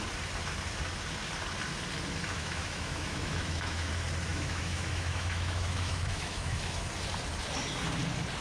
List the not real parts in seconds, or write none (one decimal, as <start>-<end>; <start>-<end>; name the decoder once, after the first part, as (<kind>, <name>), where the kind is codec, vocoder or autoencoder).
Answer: 2.3-3.9 (autoencoder, DAC-VAE); 4.3-6.9